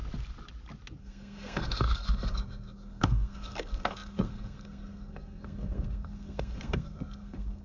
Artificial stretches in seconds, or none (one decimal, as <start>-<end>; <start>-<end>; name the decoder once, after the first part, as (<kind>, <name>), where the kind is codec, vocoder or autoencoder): 1.0-7.6 (codec, SNAC)